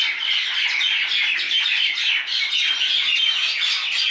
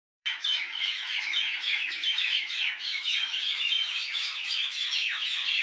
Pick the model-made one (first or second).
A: second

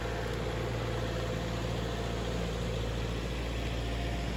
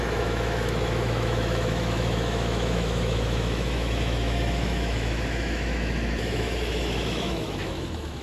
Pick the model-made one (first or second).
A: second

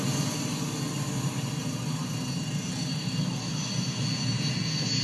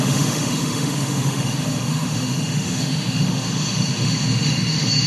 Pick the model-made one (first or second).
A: second